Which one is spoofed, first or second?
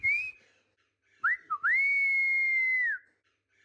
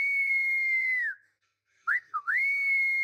second